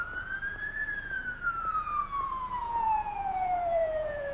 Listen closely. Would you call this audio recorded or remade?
remade